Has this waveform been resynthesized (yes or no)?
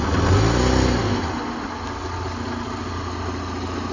no